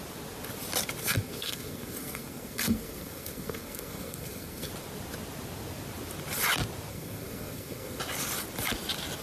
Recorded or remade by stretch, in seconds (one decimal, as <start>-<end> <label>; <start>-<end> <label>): 0.0-1.0 recorded; 1.0-4.7 remade; 4.7-6.9 recorded; 6.9-8.0 remade; 8.0-9.2 recorded

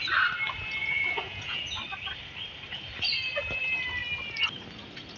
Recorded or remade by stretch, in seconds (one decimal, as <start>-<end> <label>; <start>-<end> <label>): 0.0-0.8 recorded; 0.8-1.6 remade; 1.6-5.2 recorded

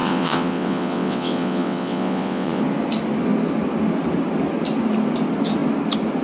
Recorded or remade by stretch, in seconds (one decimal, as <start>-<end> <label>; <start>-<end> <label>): 0.0-2.6 remade; 2.6-6.2 recorded

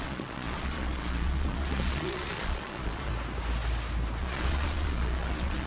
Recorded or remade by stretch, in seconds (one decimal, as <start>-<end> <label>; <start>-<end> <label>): 0.0-3.1 remade; 3.1-4.2 recorded; 4.2-5.7 remade

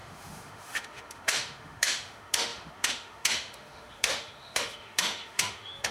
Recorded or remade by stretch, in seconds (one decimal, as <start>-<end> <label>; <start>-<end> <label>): 0.0-5.9 remade

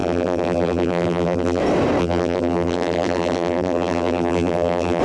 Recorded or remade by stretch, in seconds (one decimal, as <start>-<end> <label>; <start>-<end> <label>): 0.0-1.6 remade; 1.6-2.0 recorded; 2.0-5.0 remade